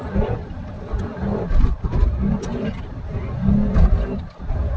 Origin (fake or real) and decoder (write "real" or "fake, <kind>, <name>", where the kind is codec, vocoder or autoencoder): real